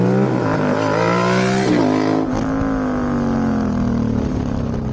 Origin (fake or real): real